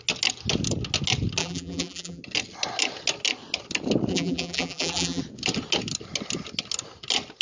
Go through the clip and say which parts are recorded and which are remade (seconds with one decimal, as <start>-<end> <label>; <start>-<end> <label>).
0.0-1.4 recorded; 1.4-2.2 remade; 2.2-4.1 recorded; 4.1-5.2 remade; 5.2-7.4 recorded